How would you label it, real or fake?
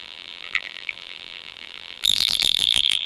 fake